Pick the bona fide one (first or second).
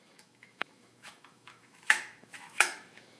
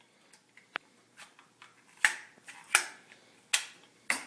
second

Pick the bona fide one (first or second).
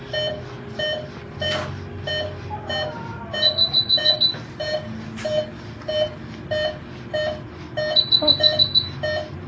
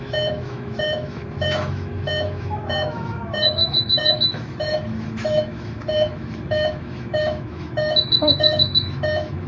first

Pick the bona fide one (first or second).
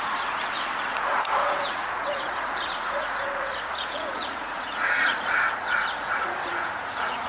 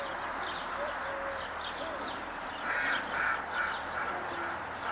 second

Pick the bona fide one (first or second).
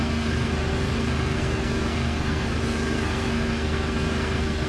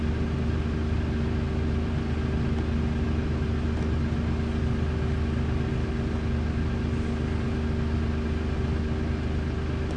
second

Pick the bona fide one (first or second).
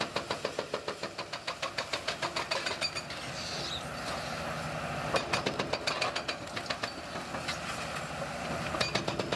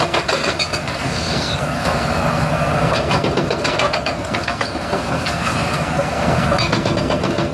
first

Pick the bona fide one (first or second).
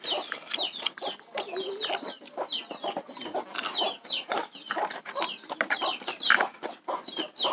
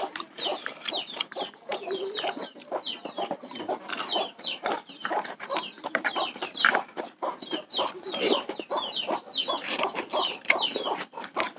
first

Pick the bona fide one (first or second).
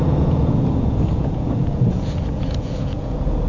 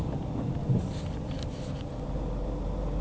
second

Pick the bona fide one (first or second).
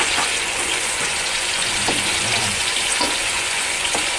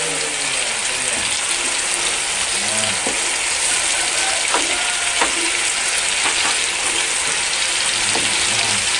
second